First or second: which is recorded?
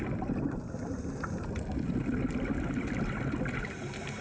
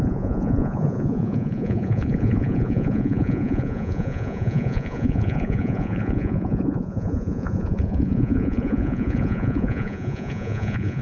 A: first